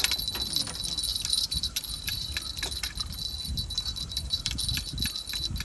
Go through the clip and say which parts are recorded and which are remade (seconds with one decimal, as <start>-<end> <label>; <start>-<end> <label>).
0.0-1.1 recorded; 1.1-2.4 remade; 2.4-3.5 recorded; 3.5-4.5 remade; 4.5-5.6 recorded